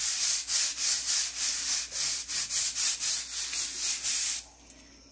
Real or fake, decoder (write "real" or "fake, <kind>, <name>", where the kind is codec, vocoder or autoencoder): real